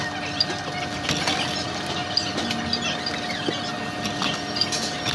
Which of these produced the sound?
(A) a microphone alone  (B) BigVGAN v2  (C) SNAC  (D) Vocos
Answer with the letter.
A